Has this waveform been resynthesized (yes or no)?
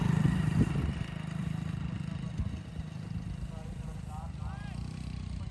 no